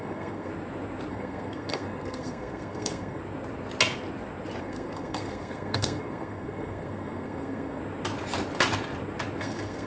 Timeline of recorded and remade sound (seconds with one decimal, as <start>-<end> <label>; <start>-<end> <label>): 0.0-0.5 remade; 0.5-1.1 recorded; 1.1-3.2 remade; 3.2-4.6 recorded; 4.6-7.8 remade; 7.8-9.4 recorded; 9.4-9.9 remade